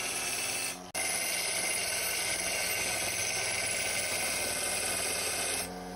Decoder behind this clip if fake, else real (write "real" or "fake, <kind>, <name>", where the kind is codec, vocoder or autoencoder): real